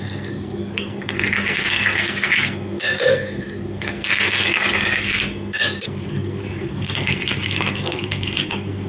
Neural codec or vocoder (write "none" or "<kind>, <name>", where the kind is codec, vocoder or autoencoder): codec, SNAC